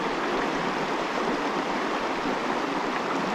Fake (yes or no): no